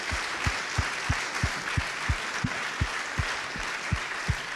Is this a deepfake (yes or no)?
no